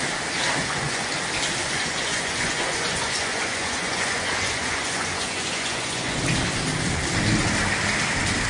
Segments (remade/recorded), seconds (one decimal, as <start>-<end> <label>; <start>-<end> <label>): 0.0-0.6 recorded; 0.6-1.1 remade; 1.1-1.6 recorded; 1.6-6.2 remade; 6.2-8.5 recorded